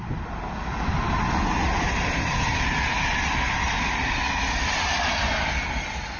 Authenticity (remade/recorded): recorded